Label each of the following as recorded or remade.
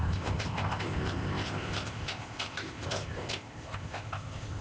remade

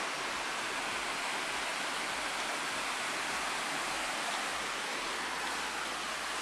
recorded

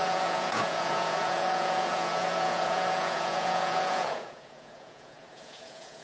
remade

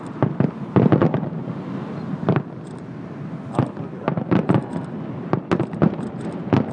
recorded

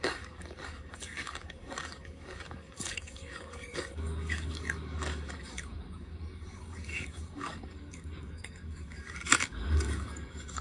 remade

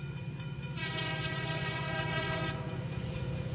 remade